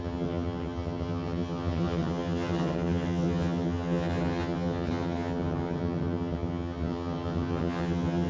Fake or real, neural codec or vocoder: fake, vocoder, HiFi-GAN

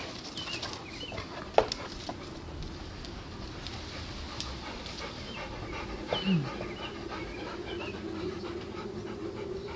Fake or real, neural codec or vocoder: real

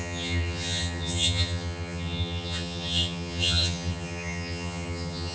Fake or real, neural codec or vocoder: fake, vocoder, HiFi-GAN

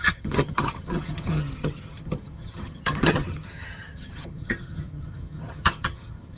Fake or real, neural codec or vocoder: fake, vocoder, HiFi-GAN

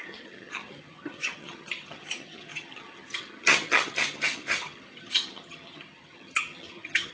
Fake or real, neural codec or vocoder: fake, vocoder, HiFi-GAN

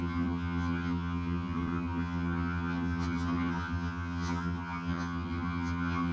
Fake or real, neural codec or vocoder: fake, vocoder, HiFi-GAN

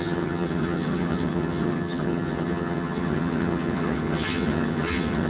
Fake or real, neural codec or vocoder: fake, vocoder, HiFi-GAN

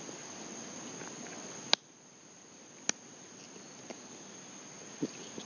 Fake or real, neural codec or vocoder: real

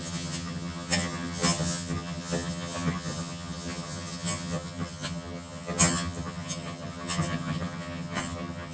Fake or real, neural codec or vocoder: fake, vocoder, HiFi-GAN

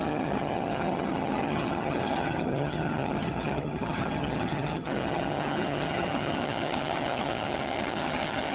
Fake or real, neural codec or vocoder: fake, vocoder, HiFi-GAN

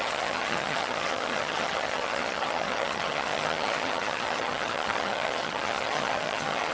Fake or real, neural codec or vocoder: fake, vocoder, HiFi-GAN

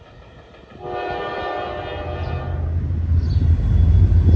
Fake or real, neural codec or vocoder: real